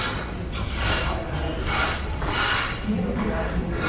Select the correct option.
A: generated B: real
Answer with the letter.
B